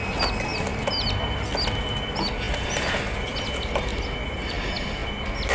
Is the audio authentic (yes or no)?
yes